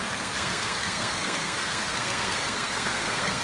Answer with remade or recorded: remade